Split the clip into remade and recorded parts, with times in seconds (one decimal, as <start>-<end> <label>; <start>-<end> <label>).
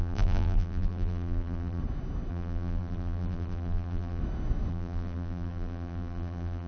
0.0-1.8 remade; 1.8-2.3 recorded; 2.3-4.2 remade; 4.2-4.7 recorded; 4.7-6.7 remade